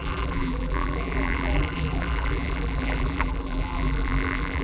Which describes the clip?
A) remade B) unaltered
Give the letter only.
A